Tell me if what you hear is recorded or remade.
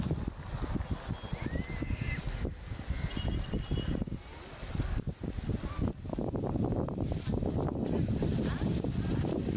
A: recorded